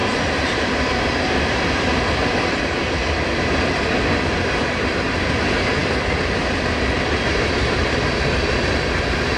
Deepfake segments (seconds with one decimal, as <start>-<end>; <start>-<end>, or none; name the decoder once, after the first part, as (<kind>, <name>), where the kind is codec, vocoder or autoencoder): 0.0-2.6 (vocoder, BigVGAN v2); 5.8-7.8